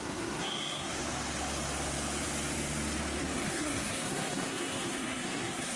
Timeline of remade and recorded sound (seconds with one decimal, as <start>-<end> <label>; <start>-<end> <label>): 0.0-1.0 remade; 1.0-3.2 recorded; 3.2-5.8 remade